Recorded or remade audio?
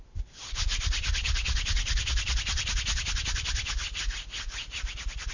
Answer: recorded